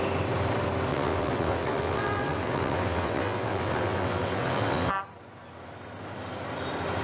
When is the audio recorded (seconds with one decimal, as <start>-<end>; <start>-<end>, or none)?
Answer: 0.0-0.9; 4.9-7.0